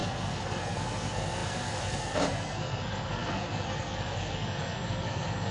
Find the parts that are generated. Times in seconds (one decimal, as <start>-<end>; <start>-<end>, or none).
0.0-5.5